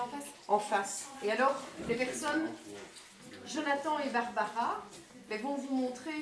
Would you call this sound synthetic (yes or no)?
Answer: no